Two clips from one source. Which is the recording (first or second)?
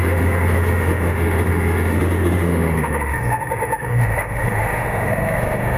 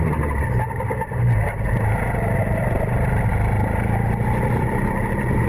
second